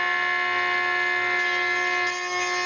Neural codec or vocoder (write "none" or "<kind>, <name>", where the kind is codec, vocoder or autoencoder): none